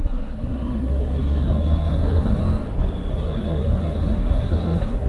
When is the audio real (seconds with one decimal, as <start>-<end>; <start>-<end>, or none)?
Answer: 2.4-3.1